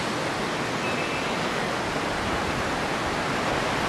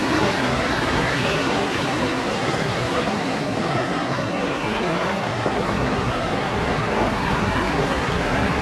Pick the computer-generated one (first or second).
second